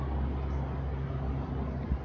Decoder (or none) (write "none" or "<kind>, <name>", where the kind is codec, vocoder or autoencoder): none